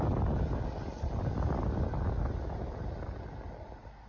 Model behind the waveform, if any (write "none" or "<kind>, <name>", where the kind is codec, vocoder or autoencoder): none